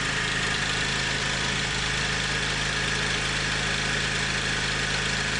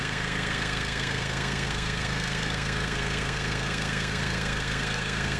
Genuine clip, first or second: first